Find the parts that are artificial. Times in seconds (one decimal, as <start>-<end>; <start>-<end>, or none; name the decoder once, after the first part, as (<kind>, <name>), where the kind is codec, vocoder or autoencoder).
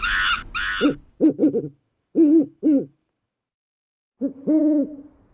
1.4-4.6 (codec, DAC)